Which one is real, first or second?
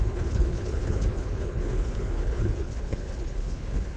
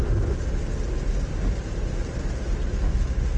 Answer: second